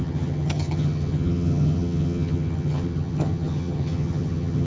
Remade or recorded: remade